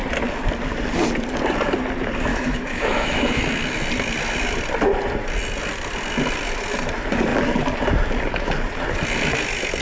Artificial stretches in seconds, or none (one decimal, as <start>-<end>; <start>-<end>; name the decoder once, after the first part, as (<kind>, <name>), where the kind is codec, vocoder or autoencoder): 2.3-3.4 (autoencoder, DAC-VAE)